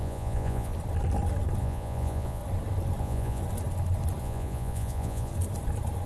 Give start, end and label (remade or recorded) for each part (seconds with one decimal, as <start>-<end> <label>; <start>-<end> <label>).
0.0-0.7 remade; 0.7-1.6 recorded; 1.6-2.4 remade; 2.4-3.0 recorded; 3.0-3.4 remade; 3.4-4.2 recorded; 4.2-5.3 remade; 5.3-6.1 recorded